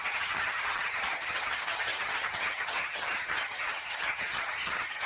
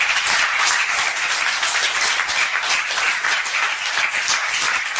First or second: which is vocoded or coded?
first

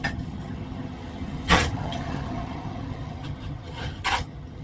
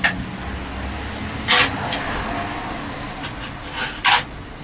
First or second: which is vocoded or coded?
first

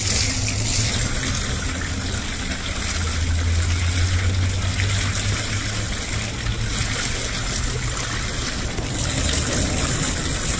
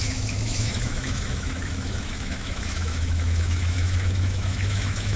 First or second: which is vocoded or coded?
second